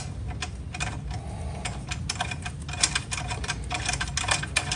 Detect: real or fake real